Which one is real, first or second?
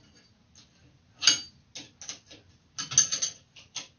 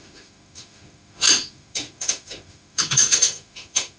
first